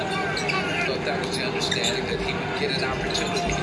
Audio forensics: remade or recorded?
recorded